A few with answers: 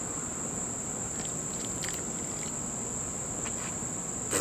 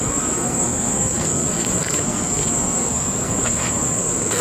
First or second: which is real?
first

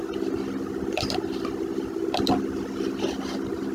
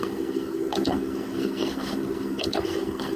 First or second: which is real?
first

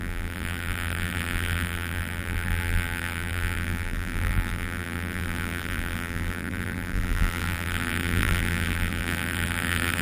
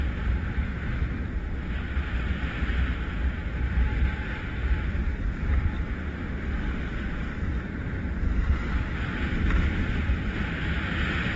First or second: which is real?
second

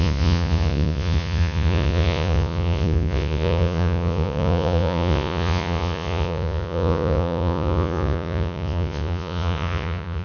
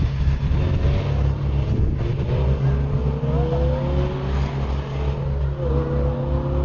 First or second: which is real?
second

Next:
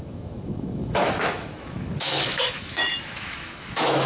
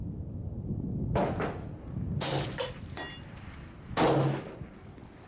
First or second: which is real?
second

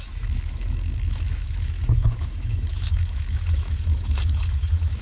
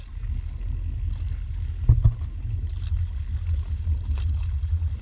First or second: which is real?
second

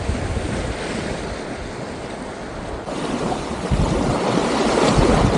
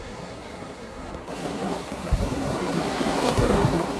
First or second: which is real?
first